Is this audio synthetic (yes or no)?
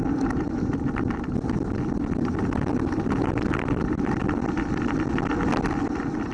no